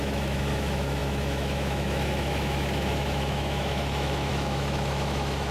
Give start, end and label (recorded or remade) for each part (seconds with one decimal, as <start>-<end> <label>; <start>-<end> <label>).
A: 0.0-5.5 remade